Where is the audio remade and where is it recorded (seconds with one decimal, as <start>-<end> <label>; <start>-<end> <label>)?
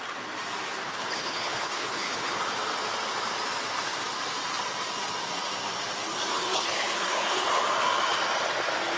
0.0-0.8 recorded; 0.8-2.3 remade; 2.3-6.3 recorded; 6.3-7.5 remade; 7.5-9.0 recorded